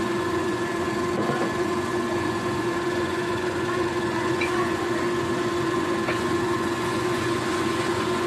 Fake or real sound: fake